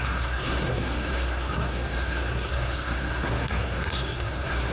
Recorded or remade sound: remade